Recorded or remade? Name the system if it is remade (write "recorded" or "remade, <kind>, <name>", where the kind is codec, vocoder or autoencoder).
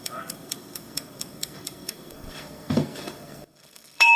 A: remade, codec, SNAC